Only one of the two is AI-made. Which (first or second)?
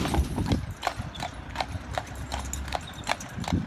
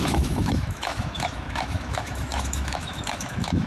second